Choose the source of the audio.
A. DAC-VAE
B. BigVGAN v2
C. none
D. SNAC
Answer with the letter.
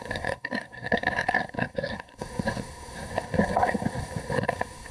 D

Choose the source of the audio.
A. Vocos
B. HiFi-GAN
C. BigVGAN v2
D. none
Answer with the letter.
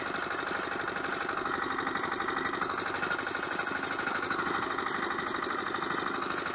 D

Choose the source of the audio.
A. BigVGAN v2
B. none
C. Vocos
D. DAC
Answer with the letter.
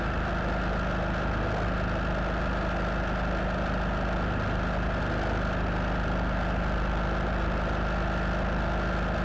B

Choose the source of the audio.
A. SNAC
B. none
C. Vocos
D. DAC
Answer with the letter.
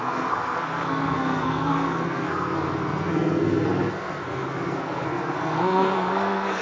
A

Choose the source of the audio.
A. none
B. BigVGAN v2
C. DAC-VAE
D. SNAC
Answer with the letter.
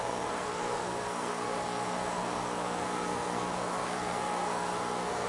D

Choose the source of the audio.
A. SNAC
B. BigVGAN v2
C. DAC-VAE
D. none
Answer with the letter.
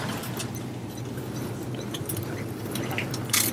D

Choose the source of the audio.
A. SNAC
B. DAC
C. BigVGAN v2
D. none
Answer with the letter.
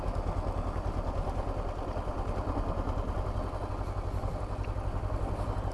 D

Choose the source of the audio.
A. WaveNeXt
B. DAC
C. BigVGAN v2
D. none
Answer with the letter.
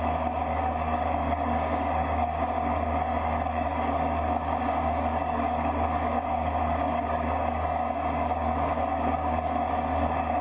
B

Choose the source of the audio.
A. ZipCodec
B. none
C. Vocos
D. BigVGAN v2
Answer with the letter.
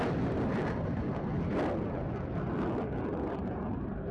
B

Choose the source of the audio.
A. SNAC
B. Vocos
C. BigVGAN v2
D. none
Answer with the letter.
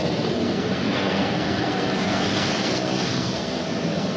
A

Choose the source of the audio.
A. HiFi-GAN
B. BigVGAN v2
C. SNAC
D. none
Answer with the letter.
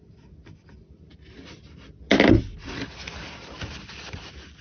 D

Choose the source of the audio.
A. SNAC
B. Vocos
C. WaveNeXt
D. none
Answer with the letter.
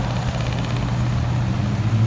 D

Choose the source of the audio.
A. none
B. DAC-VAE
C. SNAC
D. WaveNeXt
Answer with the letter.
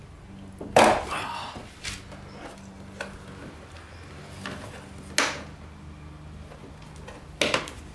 A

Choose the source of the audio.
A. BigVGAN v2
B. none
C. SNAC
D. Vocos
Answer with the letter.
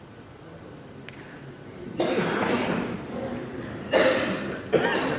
B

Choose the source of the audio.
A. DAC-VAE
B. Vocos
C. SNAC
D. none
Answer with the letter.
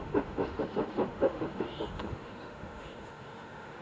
A